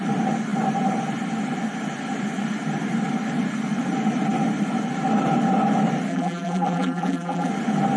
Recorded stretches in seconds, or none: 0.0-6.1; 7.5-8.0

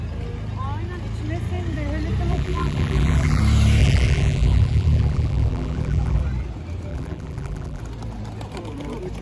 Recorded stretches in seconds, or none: 0.0-2.3; 3.4-3.8; 6.2-6.9; 7.8-9.2

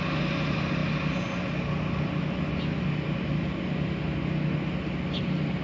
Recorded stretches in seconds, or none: 0.0-5.6

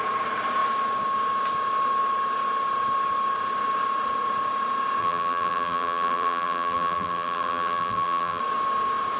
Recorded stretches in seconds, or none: 0.0-5.0; 8.4-9.2